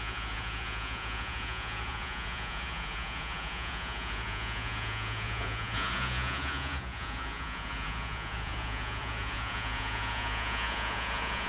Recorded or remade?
remade